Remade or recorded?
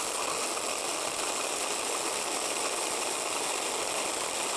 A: recorded